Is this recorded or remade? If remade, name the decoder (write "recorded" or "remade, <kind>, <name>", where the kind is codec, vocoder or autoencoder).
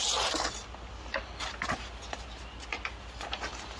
recorded